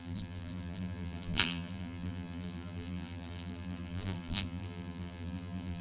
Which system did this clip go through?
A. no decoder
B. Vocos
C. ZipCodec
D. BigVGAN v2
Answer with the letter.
D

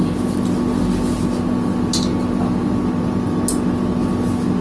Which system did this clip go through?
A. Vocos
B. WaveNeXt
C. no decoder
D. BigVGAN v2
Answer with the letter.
C